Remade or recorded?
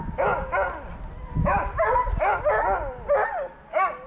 recorded